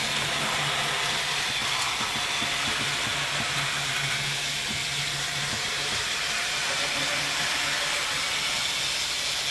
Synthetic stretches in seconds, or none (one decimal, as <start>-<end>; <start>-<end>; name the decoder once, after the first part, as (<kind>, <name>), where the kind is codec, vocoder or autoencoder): none